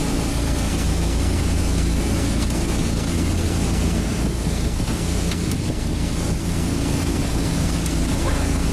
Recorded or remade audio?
remade